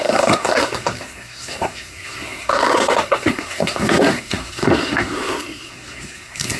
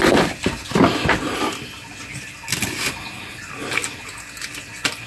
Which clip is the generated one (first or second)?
first